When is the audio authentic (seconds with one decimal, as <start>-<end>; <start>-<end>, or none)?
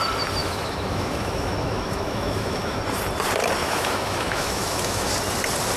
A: 0.0-0.4; 2.8-3.6; 5.1-5.8